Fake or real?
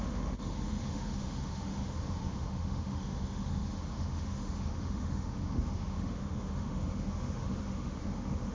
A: fake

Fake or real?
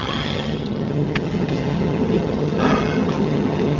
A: fake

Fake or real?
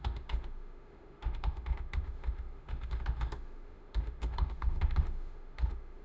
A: fake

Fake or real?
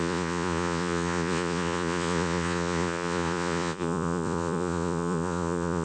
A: fake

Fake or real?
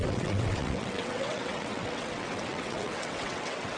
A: fake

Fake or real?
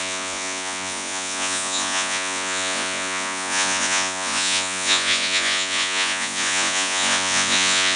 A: fake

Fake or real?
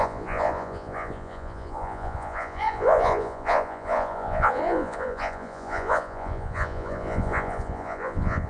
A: fake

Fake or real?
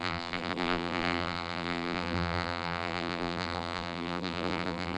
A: fake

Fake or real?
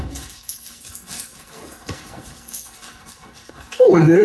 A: fake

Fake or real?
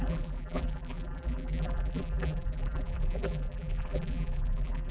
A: fake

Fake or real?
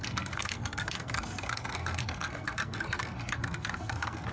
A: fake